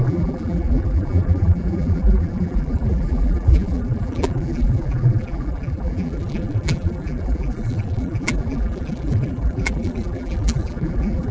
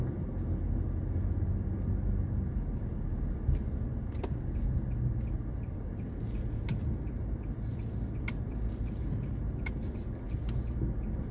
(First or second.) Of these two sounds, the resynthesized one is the first